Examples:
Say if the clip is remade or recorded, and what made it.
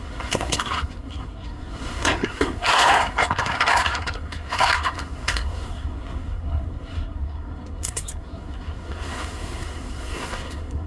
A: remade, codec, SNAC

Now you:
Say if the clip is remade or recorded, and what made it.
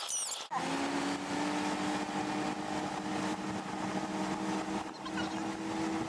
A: recorded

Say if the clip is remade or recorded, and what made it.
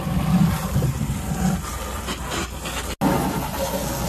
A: recorded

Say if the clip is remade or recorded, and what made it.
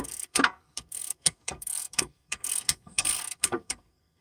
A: remade, codec, SNAC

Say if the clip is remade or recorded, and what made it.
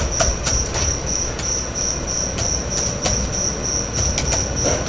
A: recorded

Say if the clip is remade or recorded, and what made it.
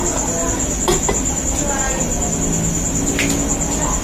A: recorded